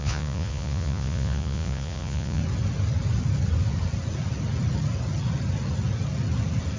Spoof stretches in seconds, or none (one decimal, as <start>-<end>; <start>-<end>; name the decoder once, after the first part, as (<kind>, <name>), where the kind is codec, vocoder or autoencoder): 0.0-2.4 (vocoder, Vocos)